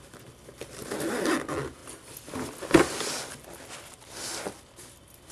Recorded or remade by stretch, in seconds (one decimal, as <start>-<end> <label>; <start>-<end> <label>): 0.0-5.3 recorded